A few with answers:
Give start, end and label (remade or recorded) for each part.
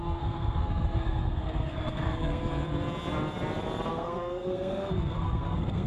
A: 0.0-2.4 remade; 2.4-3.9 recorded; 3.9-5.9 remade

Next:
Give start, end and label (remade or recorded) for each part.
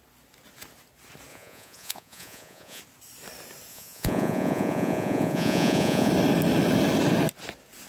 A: 0.0-1.3 recorded; 1.3-2.8 remade; 2.8-3.7 recorded; 3.7-6.1 remade; 6.1-7.9 recorded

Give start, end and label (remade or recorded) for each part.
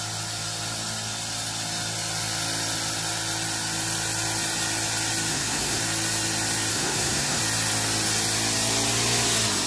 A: 0.0-5.3 recorded; 5.3-5.8 remade; 5.8-6.7 recorded; 6.7-7.4 remade; 7.4-9.7 recorded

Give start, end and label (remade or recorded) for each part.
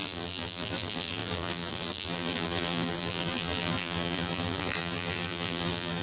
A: 0.0-6.0 remade